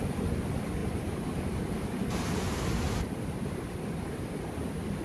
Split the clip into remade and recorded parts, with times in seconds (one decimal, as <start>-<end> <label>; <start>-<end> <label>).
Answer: 0.0-0.8 recorded; 0.8-3.8 remade; 3.8-5.0 recorded